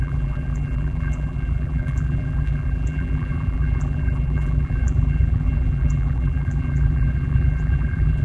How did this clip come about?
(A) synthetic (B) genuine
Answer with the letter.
A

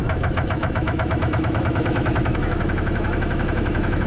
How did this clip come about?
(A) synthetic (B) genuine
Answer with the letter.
A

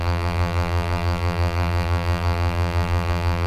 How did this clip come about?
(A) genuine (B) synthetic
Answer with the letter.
B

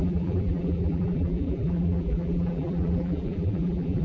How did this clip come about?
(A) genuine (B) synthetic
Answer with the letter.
B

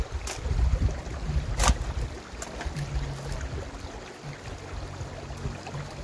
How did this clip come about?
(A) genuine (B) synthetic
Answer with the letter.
A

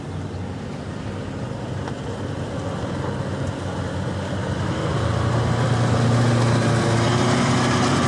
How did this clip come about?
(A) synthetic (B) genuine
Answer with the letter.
B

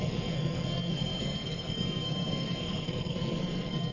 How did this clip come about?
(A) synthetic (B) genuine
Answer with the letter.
A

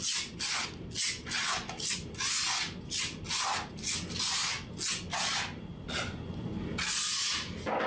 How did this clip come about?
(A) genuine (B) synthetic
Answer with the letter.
A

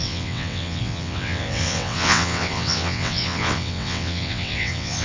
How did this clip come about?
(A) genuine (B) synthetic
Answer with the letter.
B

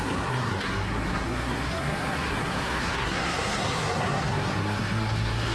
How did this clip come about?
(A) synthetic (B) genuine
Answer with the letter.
A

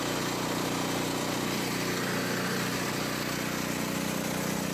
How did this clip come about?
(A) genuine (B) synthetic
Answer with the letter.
A